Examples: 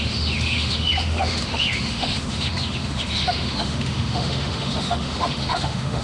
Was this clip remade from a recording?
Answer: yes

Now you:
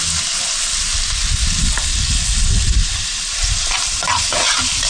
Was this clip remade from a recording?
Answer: no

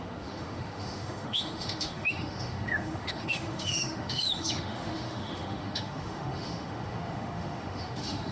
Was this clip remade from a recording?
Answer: yes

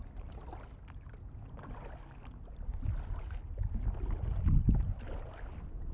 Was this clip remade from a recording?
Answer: no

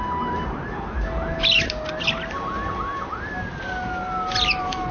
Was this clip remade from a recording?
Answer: no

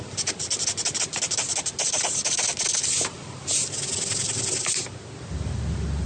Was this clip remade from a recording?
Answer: no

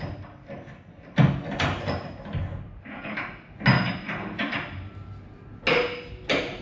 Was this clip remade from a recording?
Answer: no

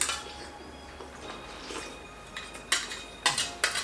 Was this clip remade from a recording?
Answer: no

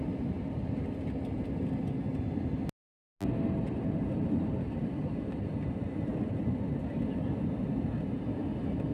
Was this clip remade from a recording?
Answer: no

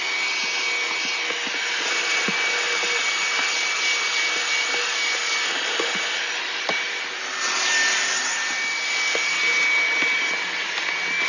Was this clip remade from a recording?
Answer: no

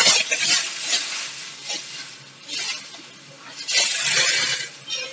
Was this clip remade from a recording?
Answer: no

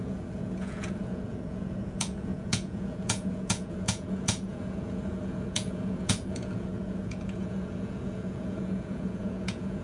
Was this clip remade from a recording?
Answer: yes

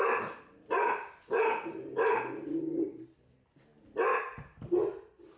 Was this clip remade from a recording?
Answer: no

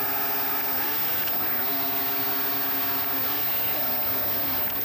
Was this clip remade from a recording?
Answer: no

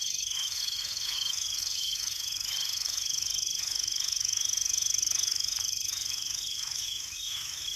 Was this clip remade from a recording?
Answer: yes